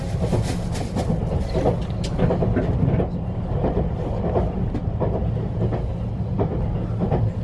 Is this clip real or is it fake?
real